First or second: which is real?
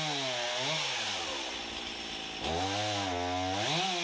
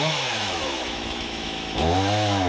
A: first